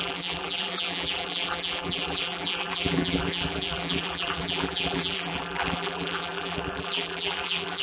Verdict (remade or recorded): remade